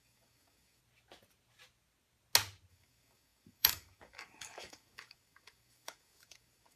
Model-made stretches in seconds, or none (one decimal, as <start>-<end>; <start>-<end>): 0.0-0.8; 2.7-6.8